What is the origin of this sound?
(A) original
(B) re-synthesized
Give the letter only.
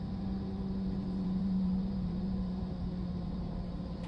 B